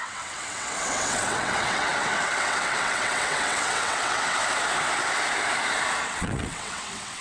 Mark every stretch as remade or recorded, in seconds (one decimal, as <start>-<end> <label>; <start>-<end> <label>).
0.0-4.4 remade; 4.4-6.0 recorded; 6.0-7.2 remade